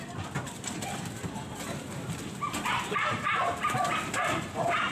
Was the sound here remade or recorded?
recorded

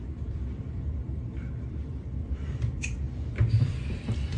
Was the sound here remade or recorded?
remade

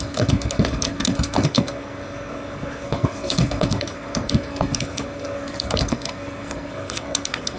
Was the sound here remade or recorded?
remade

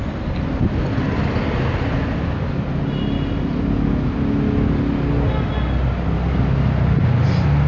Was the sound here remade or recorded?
recorded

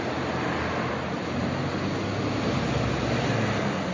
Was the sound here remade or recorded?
recorded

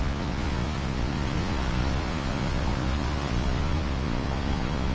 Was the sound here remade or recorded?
remade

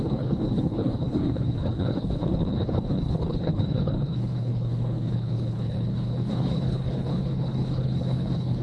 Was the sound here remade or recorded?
remade